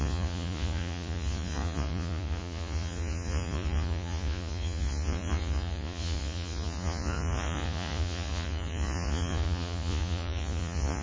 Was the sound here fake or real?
fake